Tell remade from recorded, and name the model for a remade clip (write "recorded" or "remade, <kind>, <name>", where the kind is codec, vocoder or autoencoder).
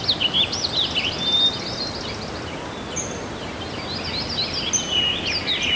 recorded